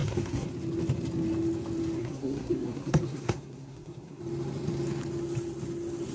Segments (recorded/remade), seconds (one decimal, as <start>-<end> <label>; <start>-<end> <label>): 0.0-0.5 remade; 0.5-2.0 recorded; 2.0-4.2 remade; 4.2-6.1 recorded